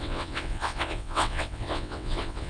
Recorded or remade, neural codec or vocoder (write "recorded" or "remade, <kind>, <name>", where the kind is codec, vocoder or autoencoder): remade, vocoder, WaveNeXt